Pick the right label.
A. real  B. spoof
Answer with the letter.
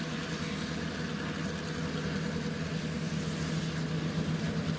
A